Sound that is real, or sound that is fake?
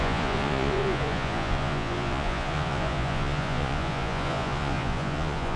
fake